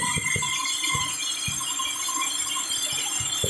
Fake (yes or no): no